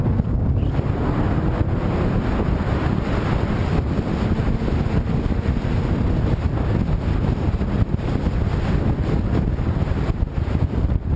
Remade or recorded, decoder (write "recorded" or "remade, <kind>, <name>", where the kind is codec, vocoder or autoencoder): recorded